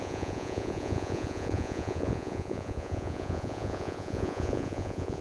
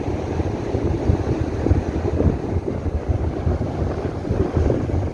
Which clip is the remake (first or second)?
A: first